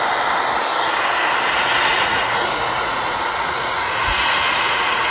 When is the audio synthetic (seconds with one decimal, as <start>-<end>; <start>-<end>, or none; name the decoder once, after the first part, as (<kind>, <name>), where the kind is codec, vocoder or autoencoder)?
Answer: 1.9-5.1 (vocoder, Vocos)